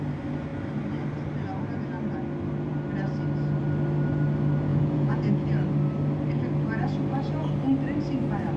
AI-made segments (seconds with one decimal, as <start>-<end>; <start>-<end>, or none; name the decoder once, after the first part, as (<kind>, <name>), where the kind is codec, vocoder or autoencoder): 4.7-5.3 (vocoder, Vocos)